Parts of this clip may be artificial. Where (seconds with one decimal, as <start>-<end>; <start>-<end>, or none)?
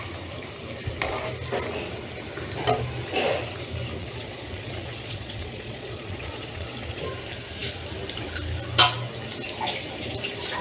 4.0-7.0